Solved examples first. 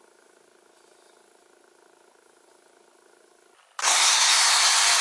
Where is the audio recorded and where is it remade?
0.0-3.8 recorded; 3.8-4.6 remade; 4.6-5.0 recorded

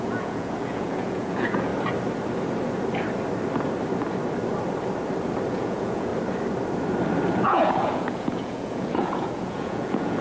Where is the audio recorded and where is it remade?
0.0-1.7 remade; 1.7-5.5 recorded; 5.5-6.1 remade; 6.1-7.4 recorded; 7.4-10.2 remade

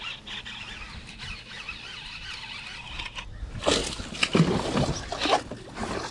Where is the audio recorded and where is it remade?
0.0-6.1 recorded

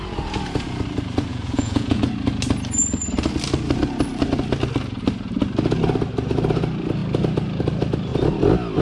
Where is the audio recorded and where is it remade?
0.0-1.3 recorded; 1.3-2.0 remade; 2.0-8.8 recorded

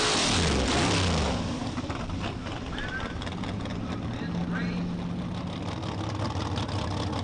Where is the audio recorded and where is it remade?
0.0-7.2 recorded